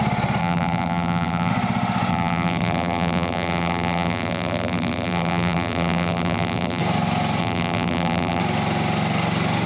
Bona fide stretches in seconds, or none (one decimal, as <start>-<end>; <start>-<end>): 0.0-0.4; 1.5-2.1; 6.8-7.4; 8.4-9.7